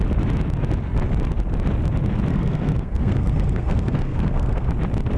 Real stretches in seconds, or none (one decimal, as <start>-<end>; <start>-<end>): 0.0-2.3; 4.7-5.2